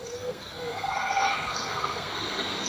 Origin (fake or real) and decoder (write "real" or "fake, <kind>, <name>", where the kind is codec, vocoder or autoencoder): fake, codec, SNAC